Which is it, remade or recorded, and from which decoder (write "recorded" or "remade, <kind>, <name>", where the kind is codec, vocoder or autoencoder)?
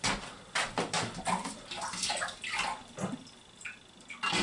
recorded